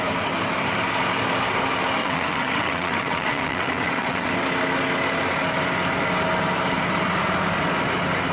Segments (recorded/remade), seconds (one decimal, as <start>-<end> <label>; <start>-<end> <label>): 0.0-2.0 recorded; 2.0-4.3 remade; 4.3-8.3 recorded